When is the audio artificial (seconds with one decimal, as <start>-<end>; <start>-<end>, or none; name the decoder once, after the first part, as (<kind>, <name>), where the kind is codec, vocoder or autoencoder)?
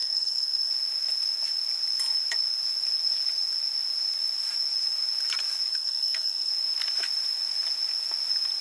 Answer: 0.0-0.7 (codec, SNAC); 5.7-6.5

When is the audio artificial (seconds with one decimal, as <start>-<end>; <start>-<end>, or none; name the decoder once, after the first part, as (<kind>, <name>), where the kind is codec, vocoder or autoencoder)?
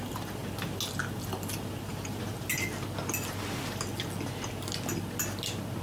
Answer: 1.9-2.5 (vocoder, BigVGAN v2)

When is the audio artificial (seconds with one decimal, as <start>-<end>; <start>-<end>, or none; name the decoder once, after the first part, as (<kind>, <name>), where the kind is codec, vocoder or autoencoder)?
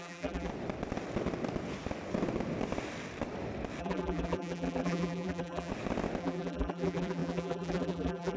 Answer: 0.0-0.5 (vocoder, BigVGAN v2); 3.8-5.7; 6.2-8.4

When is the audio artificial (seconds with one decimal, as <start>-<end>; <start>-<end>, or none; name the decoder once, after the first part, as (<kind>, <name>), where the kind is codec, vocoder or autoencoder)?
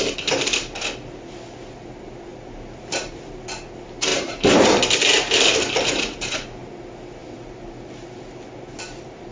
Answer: 4.1-6.7 (vocoder, BigVGAN v2)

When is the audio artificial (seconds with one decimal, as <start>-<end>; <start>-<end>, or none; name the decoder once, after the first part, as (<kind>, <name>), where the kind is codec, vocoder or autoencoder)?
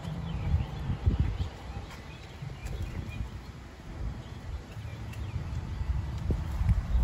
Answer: 0.0-2.6 (vocoder, BigVGAN v2); 4.5-7.0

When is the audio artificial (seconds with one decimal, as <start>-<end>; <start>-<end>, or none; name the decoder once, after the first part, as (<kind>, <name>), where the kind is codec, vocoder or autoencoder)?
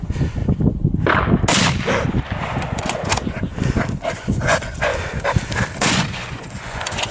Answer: 0.0-0.4 (vocoder, Vocos); 2.4-3.5; 4.1-4.9; 5.8-7.1